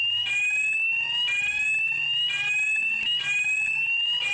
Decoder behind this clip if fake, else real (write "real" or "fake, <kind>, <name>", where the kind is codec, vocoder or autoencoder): real